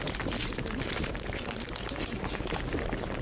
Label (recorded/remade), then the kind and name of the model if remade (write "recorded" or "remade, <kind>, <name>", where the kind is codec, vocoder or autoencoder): recorded